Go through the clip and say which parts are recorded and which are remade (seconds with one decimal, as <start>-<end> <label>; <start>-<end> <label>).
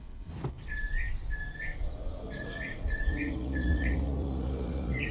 0.0-1.8 recorded; 1.8-5.1 remade